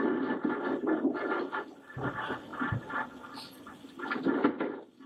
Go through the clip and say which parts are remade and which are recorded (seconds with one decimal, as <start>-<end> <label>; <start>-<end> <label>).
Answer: 0.0-5.1 recorded